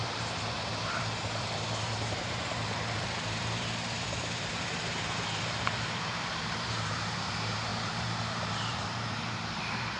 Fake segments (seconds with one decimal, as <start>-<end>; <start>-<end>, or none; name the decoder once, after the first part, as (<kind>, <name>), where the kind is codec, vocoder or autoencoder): 0.0-10.0 (vocoder, BigVGAN v2)